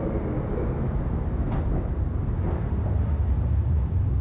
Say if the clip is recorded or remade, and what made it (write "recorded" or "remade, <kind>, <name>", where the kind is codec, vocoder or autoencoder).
recorded